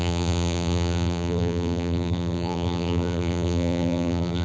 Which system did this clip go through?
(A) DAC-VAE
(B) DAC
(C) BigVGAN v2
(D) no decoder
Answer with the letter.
C